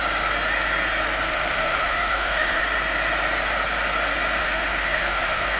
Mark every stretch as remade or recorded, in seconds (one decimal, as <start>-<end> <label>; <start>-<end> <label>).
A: 0.0-1.3 recorded; 1.3-2.6 remade; 2.6-4.4 recorded; 4.4-5.6 remade